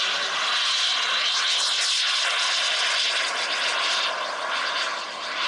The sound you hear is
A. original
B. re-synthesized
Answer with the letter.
A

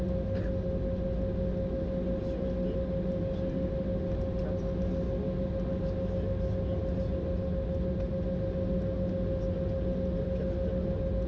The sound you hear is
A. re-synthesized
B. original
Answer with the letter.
B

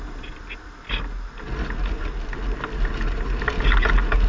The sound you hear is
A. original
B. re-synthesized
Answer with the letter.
A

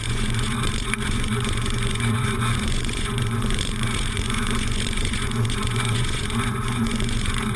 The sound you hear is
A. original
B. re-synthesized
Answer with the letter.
B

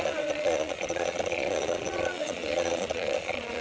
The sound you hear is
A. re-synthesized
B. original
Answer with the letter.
A